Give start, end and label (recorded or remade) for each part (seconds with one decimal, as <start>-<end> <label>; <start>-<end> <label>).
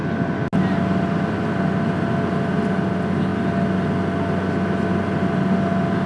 0.0-6.1 recorded